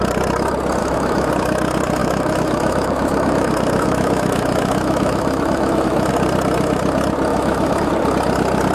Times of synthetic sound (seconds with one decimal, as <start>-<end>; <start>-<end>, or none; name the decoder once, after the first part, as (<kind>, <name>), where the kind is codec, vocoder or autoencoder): 0.8-1.3 (autoencoder, DAC-VAE); 2.0-6.1; 7.3-7.9